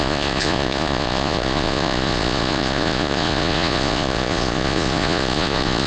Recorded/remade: remade